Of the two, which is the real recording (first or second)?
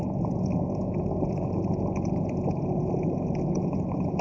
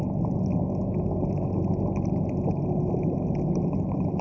second